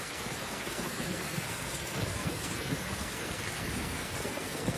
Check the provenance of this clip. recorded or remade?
remade